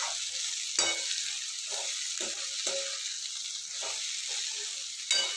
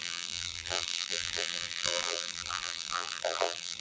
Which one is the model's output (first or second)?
second